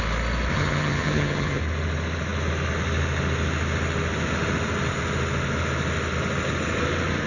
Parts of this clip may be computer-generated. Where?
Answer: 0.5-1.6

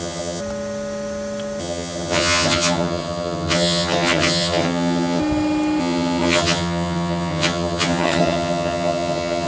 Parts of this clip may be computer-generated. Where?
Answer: 0.0-0.4; 1.6-5.2; 5.8-9.5

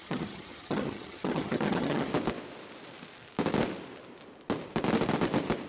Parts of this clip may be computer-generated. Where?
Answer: 0.0-2.1

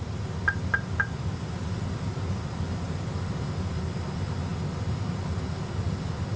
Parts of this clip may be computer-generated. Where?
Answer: none

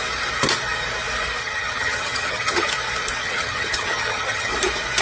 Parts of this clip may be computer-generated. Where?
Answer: 1.4-2.7; 3.2-4.5